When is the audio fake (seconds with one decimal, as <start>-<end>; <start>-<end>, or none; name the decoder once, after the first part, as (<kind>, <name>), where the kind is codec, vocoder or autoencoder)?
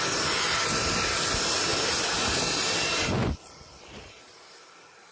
1.7-2.4 (vocoder, BigVGAN v2); 3.2-5.1